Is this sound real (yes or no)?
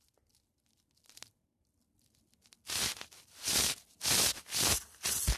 yes